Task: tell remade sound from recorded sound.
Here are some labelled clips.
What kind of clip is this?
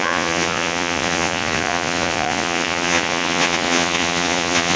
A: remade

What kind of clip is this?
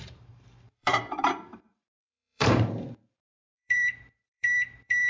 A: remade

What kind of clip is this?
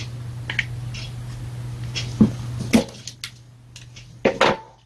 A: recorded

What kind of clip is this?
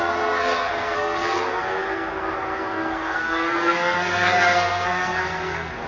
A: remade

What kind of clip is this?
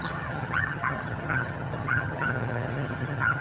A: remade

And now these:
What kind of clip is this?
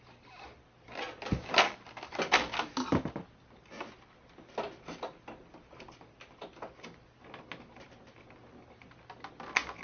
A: recorded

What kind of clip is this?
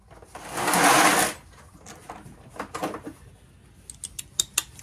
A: recorded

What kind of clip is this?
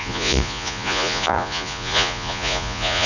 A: remade